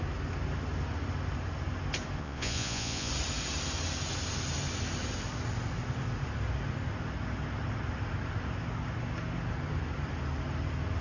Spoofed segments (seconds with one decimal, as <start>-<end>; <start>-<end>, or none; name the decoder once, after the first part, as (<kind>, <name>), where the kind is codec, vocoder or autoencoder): 2.2-3.1 (vocoder, Vocos)